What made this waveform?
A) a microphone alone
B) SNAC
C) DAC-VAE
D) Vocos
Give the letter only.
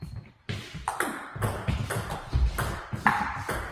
A